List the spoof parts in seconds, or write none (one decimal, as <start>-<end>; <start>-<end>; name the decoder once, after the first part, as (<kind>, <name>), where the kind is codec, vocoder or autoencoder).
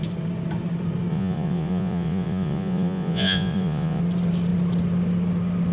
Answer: 1.1-4.0 (vocoder, Vocos)